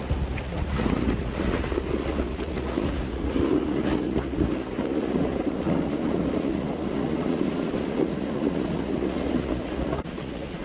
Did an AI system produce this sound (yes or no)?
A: yes